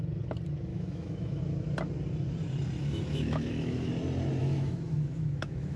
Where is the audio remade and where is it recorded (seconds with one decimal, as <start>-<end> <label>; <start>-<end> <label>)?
0.0-0.7 recorded; 0.7-1.4 remade; 1.4-2.8 recorded; 2.8-3.9 remade; 3.9-4.4 recorded; 4.4-5.8 remade